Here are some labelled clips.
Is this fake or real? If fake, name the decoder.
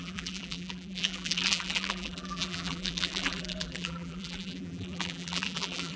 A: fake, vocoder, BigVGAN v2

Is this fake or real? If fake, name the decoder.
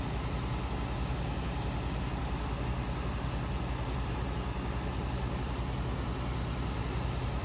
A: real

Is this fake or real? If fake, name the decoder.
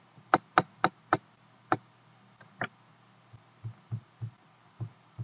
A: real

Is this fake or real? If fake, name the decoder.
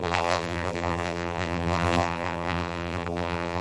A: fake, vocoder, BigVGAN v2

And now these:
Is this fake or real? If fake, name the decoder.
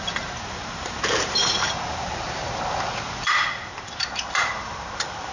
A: fake, vocoder, BigVGAN v2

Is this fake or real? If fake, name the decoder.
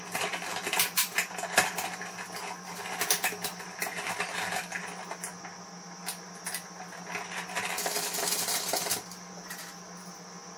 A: real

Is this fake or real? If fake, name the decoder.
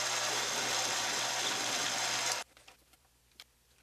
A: fake, vocoder, BigVGAN v2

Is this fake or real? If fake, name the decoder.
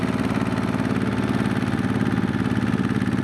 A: real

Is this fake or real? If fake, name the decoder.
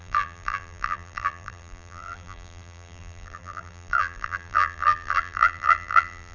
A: fake, vocoder, BigVGAN v2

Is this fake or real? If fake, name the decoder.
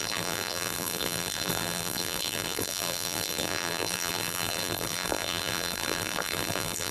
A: fake, vocoder, BigVGAN v2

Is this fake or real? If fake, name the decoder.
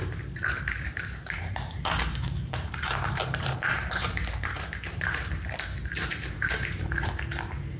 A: fake, vocoder, BigVGAN v2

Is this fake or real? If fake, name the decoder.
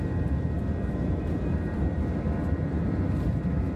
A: fake, vocoder, BigVGAN v2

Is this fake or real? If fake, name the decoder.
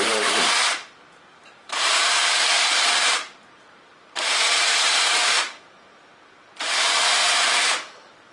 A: fake, vocoder, BigVGAN v2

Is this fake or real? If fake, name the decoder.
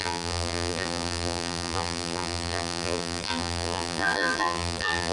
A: fake, vocoder, BigVGAN v2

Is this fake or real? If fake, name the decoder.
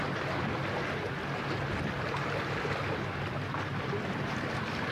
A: real